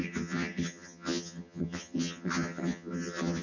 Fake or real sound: fake